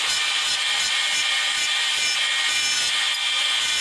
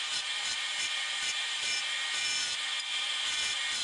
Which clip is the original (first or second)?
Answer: first